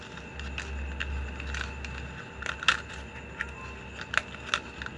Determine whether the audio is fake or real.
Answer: real